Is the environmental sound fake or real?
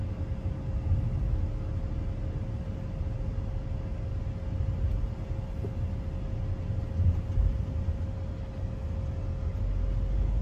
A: real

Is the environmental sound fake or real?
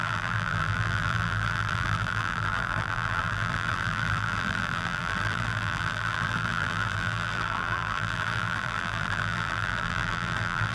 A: fake